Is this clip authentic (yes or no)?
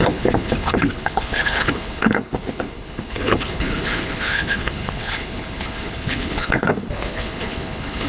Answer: no